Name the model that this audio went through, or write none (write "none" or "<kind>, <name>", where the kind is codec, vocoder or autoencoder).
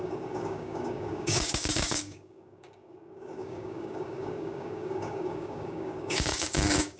codec, DAC